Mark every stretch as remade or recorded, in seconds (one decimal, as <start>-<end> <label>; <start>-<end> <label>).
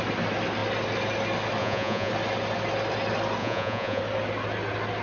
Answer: 0.0-1.6 recorded; 1.6-2.1 remade; 2.1-3.4 recorded; 3.4-4.0 remade; 4.0-5.0 recorded